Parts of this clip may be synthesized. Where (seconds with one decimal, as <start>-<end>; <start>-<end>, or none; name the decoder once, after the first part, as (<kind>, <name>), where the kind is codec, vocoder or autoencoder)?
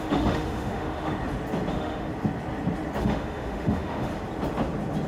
0.0-1.1 (autoencoder, DAC-VAE); 1.7-2.1; 3.0-4.1